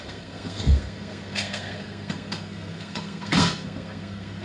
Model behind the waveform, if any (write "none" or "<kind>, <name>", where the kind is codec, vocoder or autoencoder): codec, SNAC